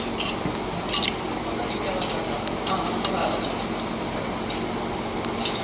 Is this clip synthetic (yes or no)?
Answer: no